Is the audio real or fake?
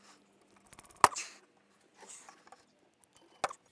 real